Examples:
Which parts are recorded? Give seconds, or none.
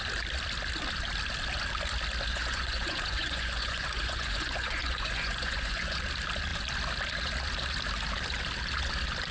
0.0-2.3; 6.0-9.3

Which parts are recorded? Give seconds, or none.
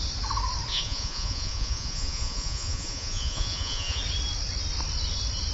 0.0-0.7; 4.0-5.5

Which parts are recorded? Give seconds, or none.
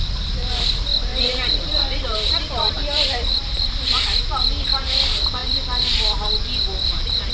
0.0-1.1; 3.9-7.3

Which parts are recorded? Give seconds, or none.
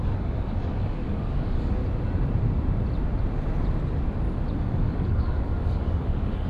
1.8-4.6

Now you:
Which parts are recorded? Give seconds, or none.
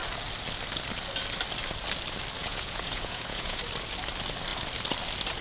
0.0-2.4; 3.6-5.4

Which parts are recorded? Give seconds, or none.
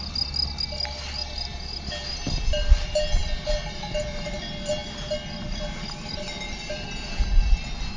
0.0-8.0